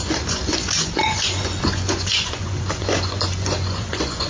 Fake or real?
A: fake